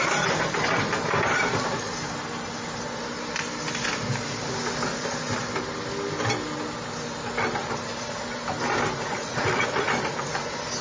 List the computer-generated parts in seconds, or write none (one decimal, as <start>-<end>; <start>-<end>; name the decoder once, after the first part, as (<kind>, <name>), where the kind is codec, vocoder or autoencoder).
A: 9.1-9.9 (vocoder, Vocos)